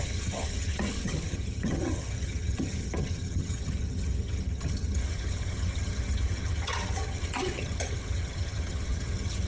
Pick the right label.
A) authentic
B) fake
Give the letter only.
B